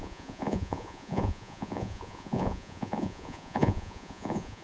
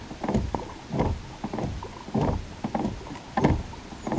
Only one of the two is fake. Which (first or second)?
first